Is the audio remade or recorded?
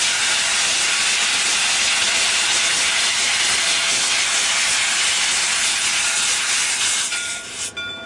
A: recorded